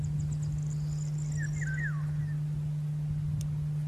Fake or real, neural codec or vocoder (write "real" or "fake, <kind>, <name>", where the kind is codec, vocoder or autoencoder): real